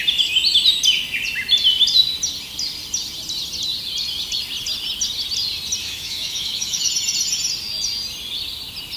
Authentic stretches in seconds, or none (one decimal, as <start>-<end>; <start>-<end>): 0.0-5.8; 6.9-9.0